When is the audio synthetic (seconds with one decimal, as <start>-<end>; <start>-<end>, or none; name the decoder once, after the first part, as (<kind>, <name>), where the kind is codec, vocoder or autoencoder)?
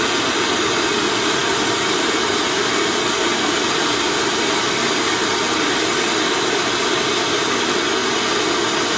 none